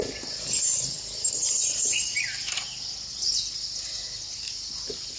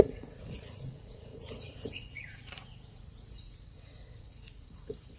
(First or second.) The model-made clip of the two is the second